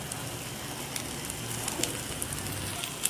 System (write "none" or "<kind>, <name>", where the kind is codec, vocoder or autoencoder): none